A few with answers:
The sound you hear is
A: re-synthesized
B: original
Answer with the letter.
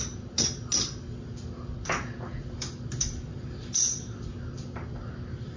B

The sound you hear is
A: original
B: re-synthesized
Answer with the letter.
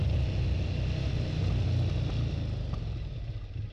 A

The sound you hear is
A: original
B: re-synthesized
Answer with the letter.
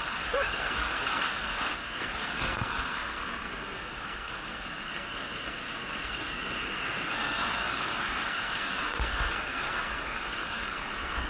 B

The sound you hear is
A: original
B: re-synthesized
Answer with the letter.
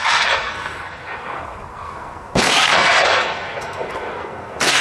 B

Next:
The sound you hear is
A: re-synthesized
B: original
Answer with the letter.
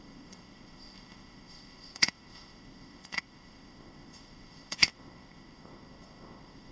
A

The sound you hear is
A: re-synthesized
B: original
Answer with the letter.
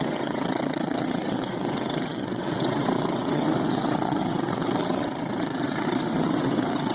A